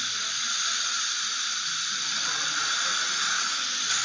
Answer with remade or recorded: remade